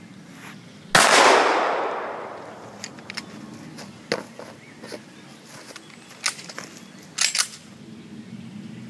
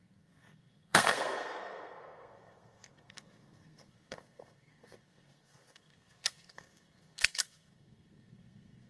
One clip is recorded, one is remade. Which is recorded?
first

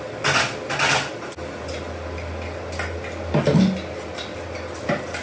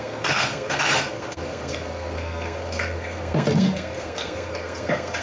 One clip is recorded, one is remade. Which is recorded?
first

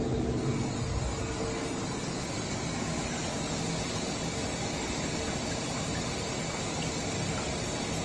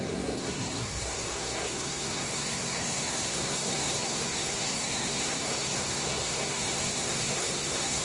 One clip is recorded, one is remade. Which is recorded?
first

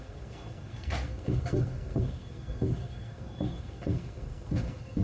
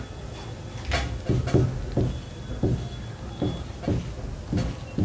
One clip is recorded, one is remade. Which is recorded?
second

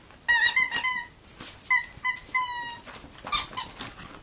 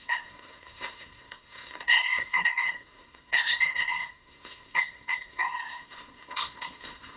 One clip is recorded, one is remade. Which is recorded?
first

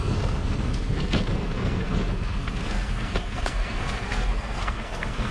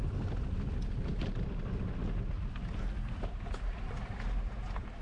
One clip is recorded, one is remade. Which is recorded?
second